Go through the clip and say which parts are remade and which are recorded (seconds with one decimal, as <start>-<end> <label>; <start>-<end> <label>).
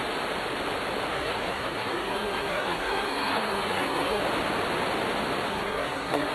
0.0-1.1 recorded; 1.1-4.2 remade; 4.2-5.5 recorded; 5.5-6.3 remade